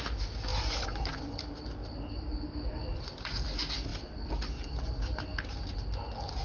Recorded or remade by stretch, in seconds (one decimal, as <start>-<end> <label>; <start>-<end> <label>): 0.0-0.5 recorded; 0.5-1.2 remade; 1.2-1.8 recorded; 1.8-3.4 remade; 3.4-6.4 recorded